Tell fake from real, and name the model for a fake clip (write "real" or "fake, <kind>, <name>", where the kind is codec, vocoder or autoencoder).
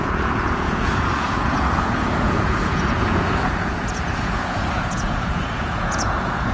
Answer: fake, vocoder, Vocos